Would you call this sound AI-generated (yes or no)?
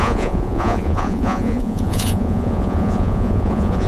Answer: yes